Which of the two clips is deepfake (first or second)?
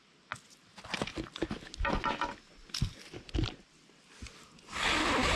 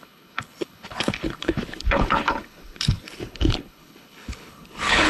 second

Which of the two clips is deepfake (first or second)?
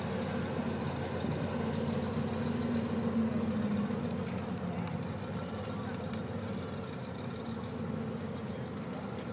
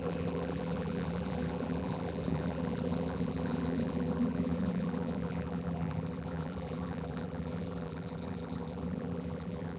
second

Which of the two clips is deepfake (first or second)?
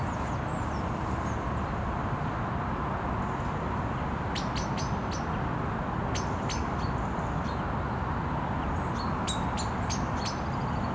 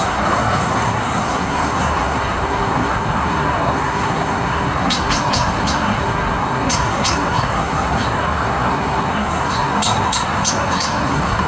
second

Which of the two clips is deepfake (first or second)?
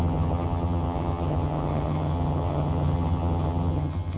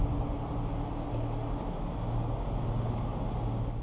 first